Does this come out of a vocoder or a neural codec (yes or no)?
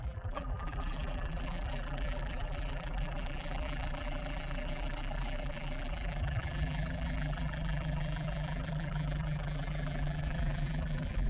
yes